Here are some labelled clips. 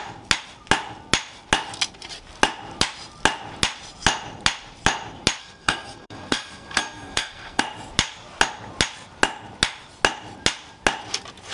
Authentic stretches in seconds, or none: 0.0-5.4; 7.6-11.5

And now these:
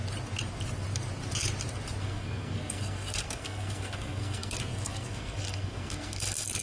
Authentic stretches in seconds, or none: 0.0-2.0

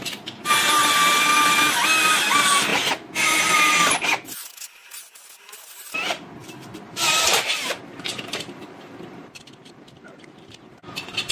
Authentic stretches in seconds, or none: 0.0-6.4

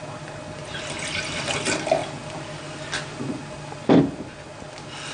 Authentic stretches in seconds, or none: 0.0-5.1

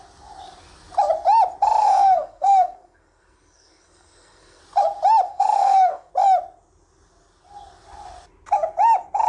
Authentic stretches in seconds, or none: 0.0-1.8; 4.6-5.3; 6.1-9.3

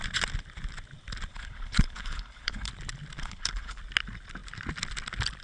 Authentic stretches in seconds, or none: 0.0-1.3; 2.7-3.2; 3.8-5.4

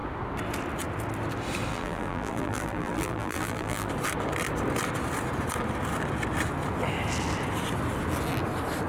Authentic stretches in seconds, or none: 0.0-1.7; 3.9-8.9

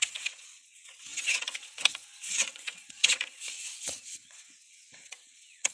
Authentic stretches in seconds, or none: none